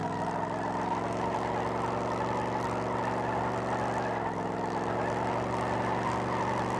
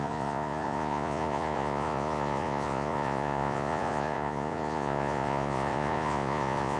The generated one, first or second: second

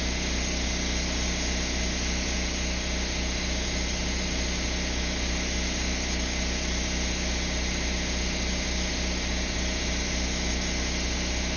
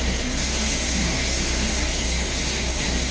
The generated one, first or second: second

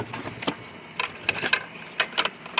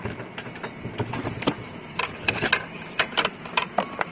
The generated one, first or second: second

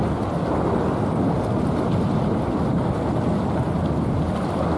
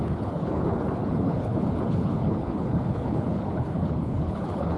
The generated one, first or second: second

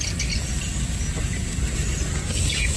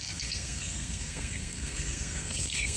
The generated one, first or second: second